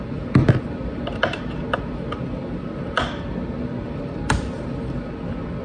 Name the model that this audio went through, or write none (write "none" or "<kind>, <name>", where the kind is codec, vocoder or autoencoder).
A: none